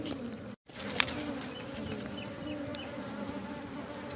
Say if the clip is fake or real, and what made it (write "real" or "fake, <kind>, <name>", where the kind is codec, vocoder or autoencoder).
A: fake, vocoder, BigVGAN v2